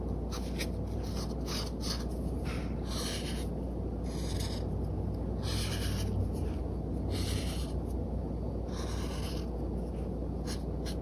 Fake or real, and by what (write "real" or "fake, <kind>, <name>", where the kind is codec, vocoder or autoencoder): real